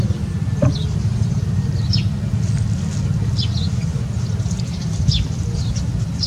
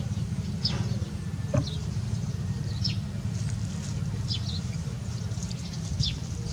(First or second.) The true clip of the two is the first